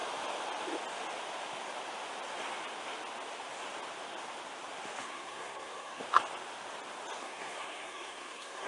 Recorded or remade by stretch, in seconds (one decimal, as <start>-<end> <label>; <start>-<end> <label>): 0.0-5.0 recorded; 5.0-6.0 remade; 6.0-7.2 recorded; 7.2-8.7 remade